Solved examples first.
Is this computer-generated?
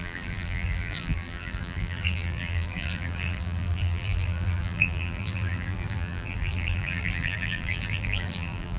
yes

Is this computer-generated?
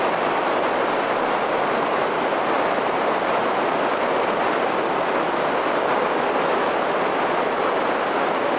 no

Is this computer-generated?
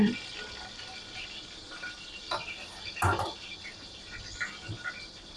no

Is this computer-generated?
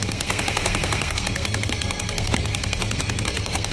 yes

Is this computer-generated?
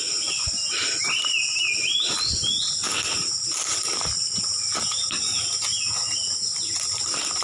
no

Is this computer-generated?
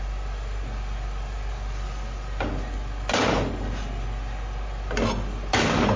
no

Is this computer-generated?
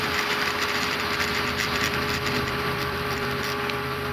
yes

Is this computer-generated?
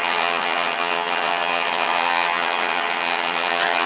yes